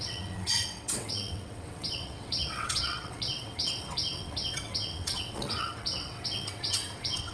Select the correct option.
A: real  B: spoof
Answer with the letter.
B